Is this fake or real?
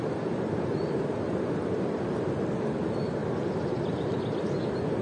real